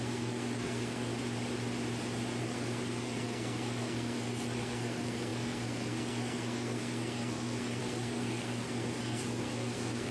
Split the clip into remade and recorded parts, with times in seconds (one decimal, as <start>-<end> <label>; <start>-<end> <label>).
0.0-1.1 remade; 1.1-2.4 recorded; 2.4-10.1 remade